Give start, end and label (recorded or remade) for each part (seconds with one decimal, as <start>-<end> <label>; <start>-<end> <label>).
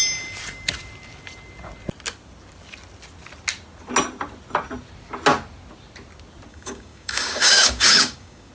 0.0-6.5 recorded; 6.5-8.5 remade